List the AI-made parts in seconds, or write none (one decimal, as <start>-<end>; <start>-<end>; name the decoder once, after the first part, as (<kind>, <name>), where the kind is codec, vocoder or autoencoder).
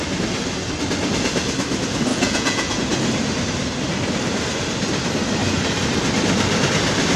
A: 2.1-2.8 (vocoder, Vocos)